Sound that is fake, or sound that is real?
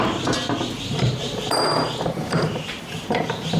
real